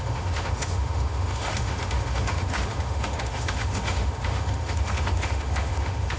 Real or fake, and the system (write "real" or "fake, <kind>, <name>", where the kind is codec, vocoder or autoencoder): fake, autoencoder, DAC-VAE